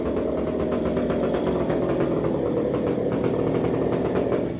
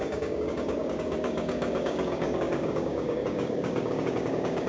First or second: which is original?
first